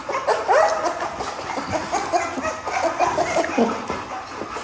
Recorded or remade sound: recorded